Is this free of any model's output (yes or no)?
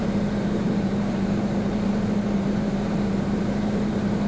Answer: no